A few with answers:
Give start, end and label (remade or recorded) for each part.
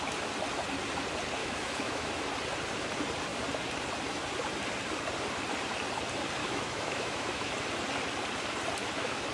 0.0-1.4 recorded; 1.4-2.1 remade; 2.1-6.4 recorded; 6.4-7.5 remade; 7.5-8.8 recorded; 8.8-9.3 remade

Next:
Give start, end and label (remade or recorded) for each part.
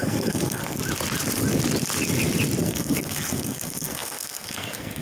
0.0-0.8 remade; 0.8-2.6 recorded; 2.6-5.0 remade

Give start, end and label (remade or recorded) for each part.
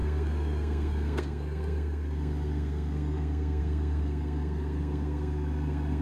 0.0-6.0 remade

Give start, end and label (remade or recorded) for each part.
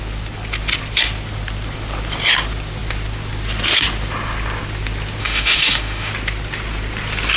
0.0-5.2 recorded; 5.2-6.1 remade; 6.1-7.4 recorded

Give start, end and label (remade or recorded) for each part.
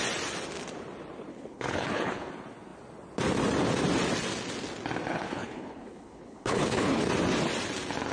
0.0-1.3 recorded; 1.3-2.3 remade; 2.3-5.1 recorded; 5.1-7.0 remade; 7.0-8.1 recorded